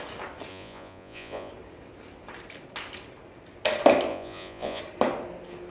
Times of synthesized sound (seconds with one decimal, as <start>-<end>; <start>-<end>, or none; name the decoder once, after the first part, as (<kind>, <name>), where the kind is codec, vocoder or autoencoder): 0.5-1.5 (vocoder, Vocos); 4.1-4.8